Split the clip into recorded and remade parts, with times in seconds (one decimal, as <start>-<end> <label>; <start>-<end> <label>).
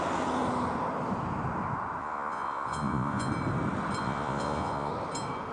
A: 0.0-2.0 recorded; 2.0-3.3 remade; 3.3-4.0 recorded; 4.0-4.9 remade; 4.9-5.5 recorded